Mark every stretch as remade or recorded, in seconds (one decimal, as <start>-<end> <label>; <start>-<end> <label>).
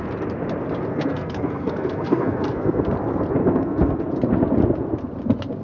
0.0-0.9 recorded; 0.9-2.9 remade; 2.9-3.4 recorded; 3.4-4.0 remade; 4.0-5.6 recorded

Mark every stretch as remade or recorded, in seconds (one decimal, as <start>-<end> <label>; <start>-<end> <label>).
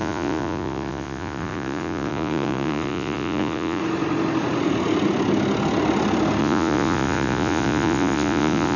0.0-3.8 remade; 3.8-6.4 recorded; 6.4-8.8 remade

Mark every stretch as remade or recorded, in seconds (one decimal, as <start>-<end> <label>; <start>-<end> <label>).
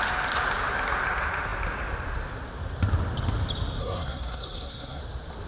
0.0-3.8 recorded; 3.8-5.0 remade; 5.0-5.5 recorded